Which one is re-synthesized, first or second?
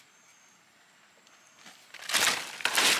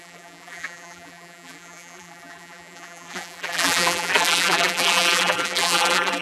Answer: second